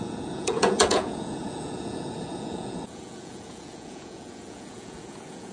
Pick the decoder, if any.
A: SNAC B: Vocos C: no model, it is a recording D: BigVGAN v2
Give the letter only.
B